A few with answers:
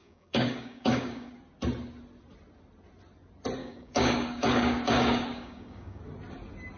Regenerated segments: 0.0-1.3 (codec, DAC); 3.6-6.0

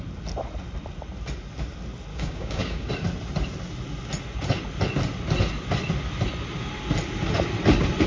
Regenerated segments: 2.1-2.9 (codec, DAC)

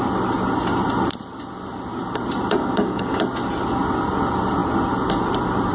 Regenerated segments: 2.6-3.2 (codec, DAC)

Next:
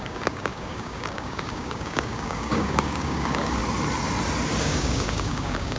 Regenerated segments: 0.0-3.6 (codec, DAC); 4.6-5.8

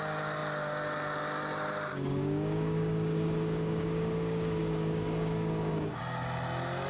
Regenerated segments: 1.9-6.0 (codec, DAC)